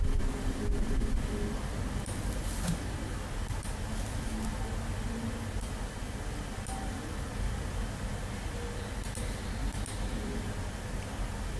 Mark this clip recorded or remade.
recorded